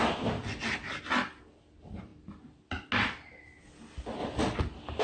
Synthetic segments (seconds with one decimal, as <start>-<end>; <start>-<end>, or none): none